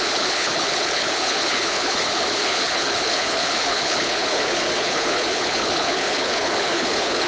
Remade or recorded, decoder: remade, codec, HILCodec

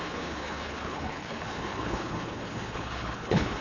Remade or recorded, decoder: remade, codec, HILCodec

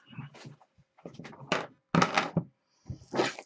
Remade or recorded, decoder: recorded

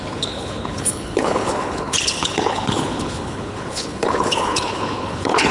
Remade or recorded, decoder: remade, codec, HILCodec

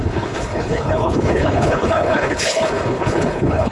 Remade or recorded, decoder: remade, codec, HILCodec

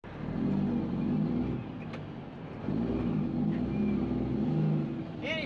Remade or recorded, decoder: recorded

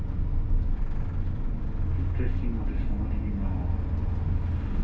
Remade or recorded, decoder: recorded